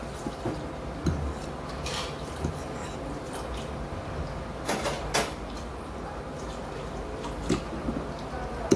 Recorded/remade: recorded